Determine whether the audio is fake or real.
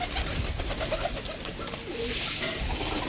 real